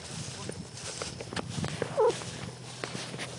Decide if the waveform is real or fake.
real